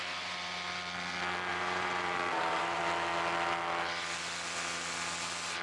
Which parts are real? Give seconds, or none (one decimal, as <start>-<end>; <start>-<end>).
0.0-1.5; 2.8-5.6